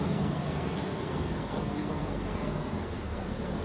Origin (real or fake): fake